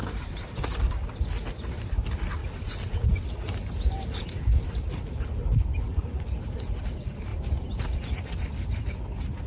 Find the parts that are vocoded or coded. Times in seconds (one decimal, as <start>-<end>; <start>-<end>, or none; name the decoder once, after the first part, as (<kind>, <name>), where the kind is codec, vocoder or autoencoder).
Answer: 0.0-0.5 (vocoder, BigVGAN v2)